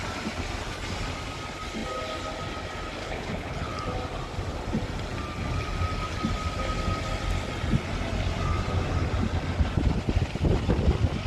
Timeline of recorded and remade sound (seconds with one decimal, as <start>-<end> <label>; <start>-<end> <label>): 0.0-3.0 recorded; 3.0-3.7 remade; 3.7-11.3 recorded